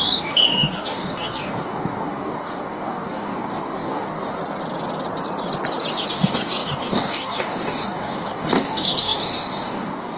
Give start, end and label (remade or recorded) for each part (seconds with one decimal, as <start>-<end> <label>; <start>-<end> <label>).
0.0-4.4 remade; 4.4-6.1 recorded; 6.1-10.2 remade